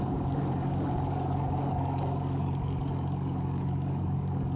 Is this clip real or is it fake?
fake